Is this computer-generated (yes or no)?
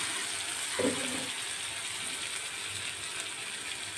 no